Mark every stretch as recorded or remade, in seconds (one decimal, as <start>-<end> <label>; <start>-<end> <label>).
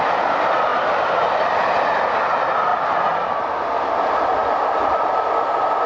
0.0-5.9 recorded